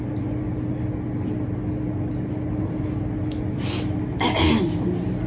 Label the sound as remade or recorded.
recorded